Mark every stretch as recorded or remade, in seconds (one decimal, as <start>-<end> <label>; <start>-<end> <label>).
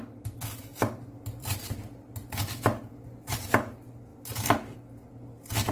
0.0-0.7 recorded; 0.7-1.6 remade; 1.6-5.7 recorded